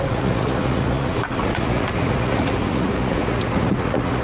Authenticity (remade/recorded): remade